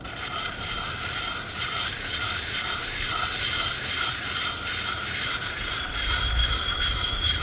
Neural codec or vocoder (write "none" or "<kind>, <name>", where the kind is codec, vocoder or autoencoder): vocoder, BigVGAN v2